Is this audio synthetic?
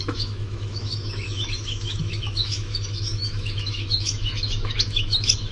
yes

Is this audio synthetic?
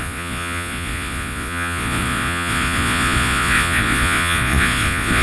yes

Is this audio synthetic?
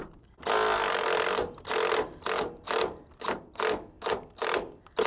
no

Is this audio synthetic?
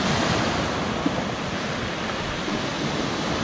no